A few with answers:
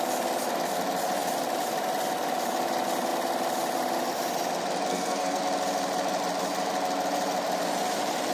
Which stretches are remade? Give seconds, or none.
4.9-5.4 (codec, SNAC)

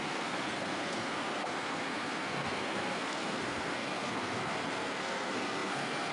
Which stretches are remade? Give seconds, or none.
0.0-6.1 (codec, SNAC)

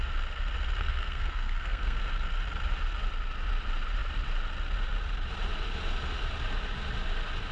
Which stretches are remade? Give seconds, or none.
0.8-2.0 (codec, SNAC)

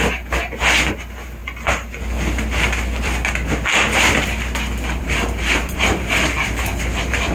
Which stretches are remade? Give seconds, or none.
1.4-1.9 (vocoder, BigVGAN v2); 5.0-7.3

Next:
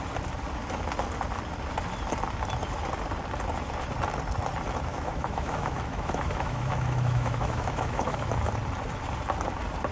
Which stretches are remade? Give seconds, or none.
4.9-8.3 (autoencoder, DAC-VAE)